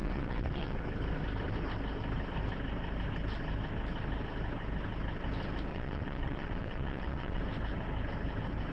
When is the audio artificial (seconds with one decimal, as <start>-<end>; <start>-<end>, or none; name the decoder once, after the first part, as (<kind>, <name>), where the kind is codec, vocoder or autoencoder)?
0.0-0.8 (vocoder, WaveNeXt); 5.7-7.4